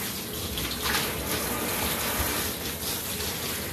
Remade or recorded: recorded